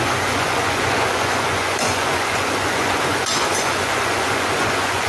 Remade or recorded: remade